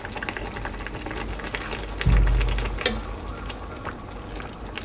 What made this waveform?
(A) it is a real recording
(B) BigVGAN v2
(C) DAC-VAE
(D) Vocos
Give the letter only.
A